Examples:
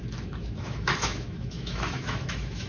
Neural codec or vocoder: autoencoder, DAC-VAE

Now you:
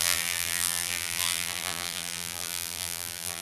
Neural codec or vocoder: vocoder, BigVGAN v2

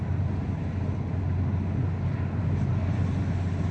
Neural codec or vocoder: none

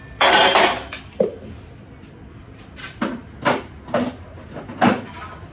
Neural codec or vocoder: none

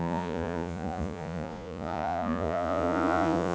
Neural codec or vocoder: vocoder, Vocos